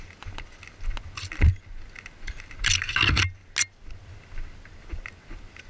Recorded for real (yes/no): yes